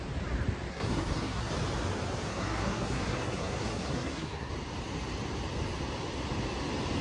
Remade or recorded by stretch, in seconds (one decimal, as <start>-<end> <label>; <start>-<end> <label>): 0.0-0.7 recorded; 0.7-1.5 remade; 1.5-2.3 recorded; 2.3-4.5 remade; 4.5-7.0 recorded